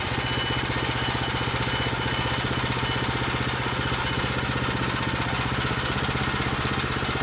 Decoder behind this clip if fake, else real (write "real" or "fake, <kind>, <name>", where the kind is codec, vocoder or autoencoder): real